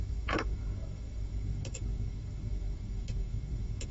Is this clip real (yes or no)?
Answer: no